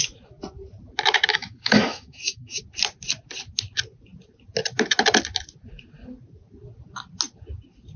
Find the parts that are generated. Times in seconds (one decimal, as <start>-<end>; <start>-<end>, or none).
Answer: 1.3-2.6

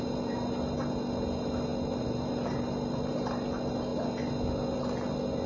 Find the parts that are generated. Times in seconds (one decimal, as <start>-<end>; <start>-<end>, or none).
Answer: none

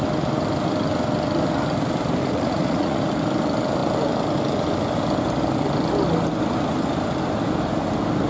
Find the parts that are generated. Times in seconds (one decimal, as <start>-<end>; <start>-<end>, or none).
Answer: 2.2-3.1